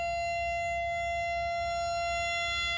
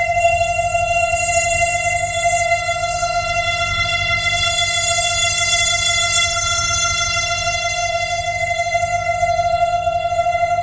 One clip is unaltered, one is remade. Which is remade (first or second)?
second